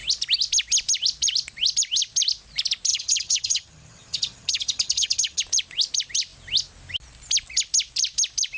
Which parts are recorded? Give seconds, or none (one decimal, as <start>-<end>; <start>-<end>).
0.0-2.9; 5.4-8.6